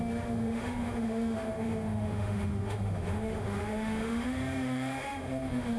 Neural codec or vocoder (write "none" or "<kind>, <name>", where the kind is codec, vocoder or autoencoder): autoencoder, DAC-VAE